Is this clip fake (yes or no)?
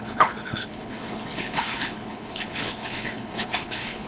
yes